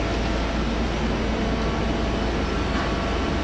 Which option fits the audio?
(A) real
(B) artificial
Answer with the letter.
A